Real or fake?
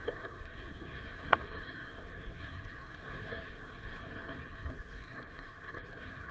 fake